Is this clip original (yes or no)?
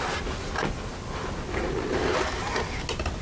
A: yes